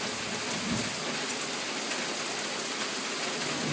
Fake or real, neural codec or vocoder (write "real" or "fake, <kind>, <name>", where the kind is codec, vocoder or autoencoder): real